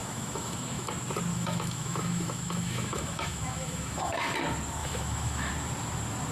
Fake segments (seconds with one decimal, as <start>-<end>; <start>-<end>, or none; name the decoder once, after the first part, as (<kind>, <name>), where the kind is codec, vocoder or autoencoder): 0.0-0.9 (autoencoder, DAC-VAE); 1.3-4.3; 4.8-5.5